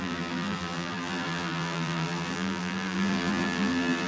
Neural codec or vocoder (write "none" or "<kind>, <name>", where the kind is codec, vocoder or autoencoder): vocoder, BigVGAN v2